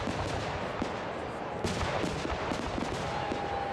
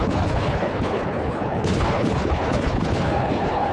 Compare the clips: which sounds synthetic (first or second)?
second